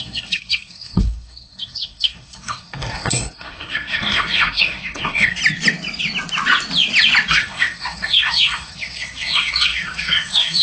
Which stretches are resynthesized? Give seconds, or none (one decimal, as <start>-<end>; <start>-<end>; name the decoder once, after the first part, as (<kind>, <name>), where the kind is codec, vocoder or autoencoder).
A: 0.0-5.4 (codec, SNAC); 7.3-10.6